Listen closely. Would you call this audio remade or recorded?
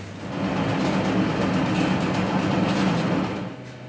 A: recorded